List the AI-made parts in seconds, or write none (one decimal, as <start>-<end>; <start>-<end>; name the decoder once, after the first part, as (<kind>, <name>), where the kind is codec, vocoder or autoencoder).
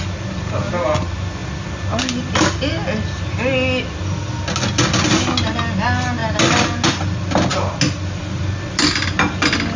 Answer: none